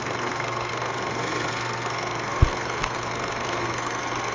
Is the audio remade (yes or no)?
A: yes